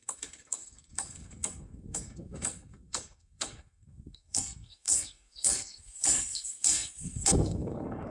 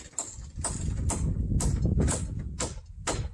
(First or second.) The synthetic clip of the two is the first